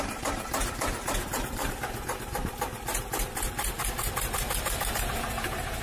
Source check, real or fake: fake